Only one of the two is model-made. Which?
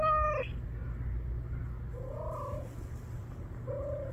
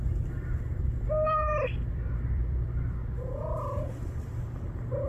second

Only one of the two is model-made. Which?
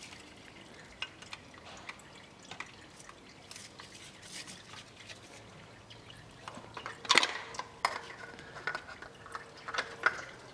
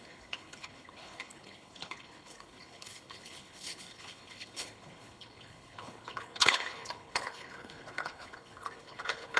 second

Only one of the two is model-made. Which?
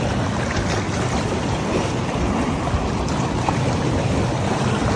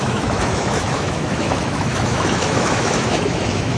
second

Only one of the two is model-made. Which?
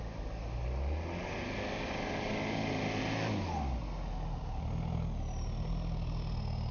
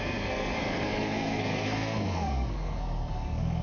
second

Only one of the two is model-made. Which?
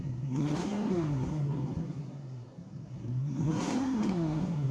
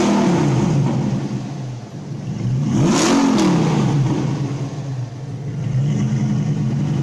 first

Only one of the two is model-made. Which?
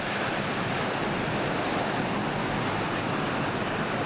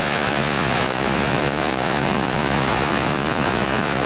second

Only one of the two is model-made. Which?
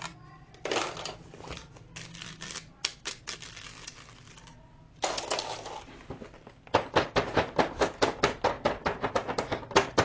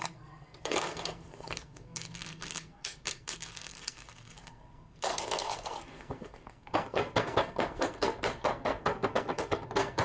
second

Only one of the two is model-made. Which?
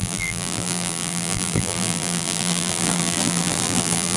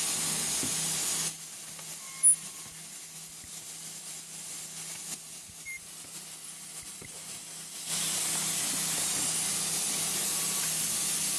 first